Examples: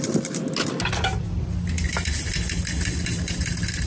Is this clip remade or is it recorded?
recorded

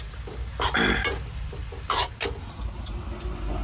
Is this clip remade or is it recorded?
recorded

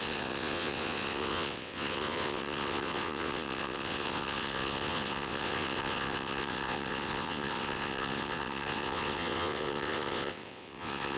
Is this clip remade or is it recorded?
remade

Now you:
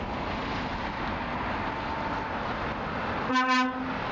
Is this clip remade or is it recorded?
recorded